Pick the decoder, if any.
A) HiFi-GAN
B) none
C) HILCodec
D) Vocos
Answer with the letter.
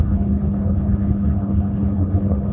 C